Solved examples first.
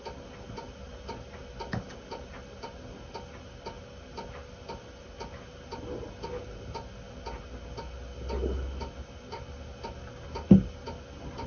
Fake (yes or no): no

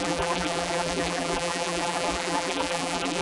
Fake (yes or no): yes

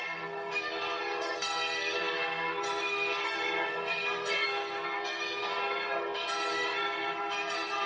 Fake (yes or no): yes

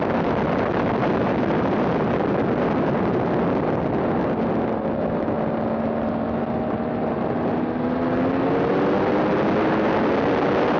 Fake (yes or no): no